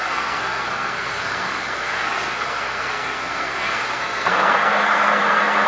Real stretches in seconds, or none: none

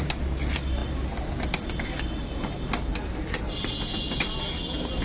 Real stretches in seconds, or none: 0.0-5.0

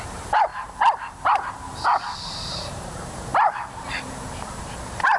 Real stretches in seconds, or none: 0.5-1.5; 3.3-4.6

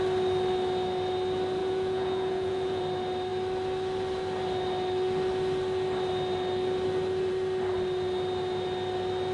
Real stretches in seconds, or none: 0.0-1.6; 2.8-9.3

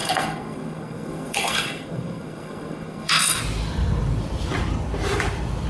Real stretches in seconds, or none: 3.4-5.7

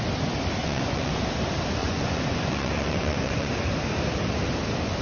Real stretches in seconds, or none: 0.0-0.6; 1.1-1.8; 3.5-5.0

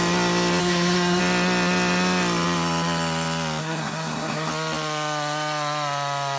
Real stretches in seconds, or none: 0.0-0.6; 1.2-3.6; 4.5-6.4

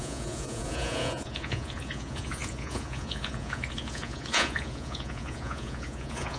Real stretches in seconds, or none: none